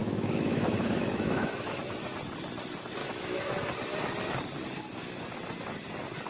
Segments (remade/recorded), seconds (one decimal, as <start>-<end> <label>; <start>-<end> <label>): 0.0-1.8 remade; 1.8-3.0 recorded; 3.0-3.5 remade; 3.5-6.3 recorded